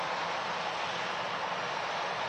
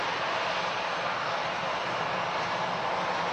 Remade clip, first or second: first